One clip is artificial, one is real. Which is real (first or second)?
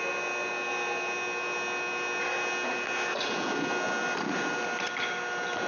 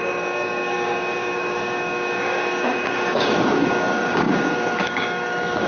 first